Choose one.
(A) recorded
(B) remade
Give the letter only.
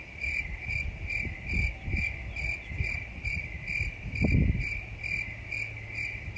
A